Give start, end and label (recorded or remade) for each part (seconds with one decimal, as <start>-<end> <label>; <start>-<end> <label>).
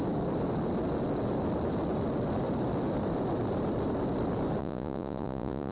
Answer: 0.0-4.6 recorded; 4.6-5.7 remade